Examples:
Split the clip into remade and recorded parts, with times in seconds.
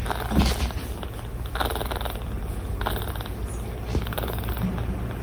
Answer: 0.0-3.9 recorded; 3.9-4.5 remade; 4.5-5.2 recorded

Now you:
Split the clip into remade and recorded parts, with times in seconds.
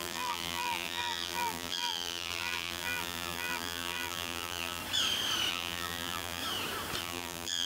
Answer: 0.0-4.8 remade; 4.8-5.5 recorded; 5.5-6.4 remade; 6.4-7.0 recorded; 7.0-7.7 remade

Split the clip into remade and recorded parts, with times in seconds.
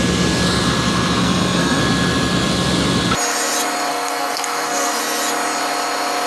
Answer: 0.0-1.2 recorded; 1.2-1.8 remade; 1.8-3.9 recorded; 3.9-5.0 remade; 5.0-6.3 recorded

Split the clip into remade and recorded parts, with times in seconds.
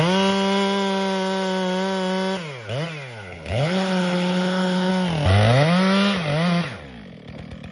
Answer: 0.0-3.3 recorded; 3.3-4.9 remade; 4.9-7.7 recorded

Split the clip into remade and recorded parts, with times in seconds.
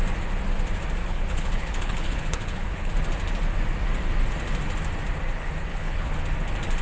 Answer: 0.0-1.0 recorded; 1.0-2.9 remade; 2.9-5.7 recorded; 5.7-6.2 remade; 6.2-6.8 recorded